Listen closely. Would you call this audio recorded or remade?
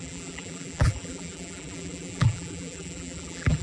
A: remade